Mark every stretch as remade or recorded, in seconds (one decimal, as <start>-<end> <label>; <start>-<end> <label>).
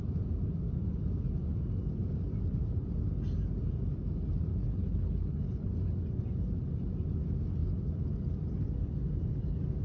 0.0-4.5 recorded; 4.5-5.7 remade; 5.7-9.8 recorded